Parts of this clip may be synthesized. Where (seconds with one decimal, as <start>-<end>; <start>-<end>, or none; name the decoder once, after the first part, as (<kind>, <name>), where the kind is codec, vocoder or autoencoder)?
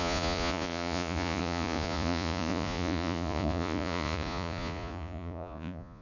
0.0-6.0 (vocoder, Vocos)